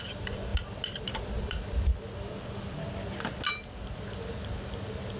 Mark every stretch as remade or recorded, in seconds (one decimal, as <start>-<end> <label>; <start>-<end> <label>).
0.0-0.5 remade; 0.5-1.4 recorded; 1.4-1.9 remade; 1.9-5.2 recorded